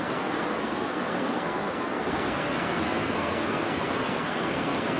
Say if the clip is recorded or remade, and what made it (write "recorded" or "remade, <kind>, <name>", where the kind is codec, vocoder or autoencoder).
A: remade, codec, SNAC